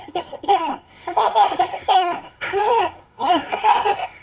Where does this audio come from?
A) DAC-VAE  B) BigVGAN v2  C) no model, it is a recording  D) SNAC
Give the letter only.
D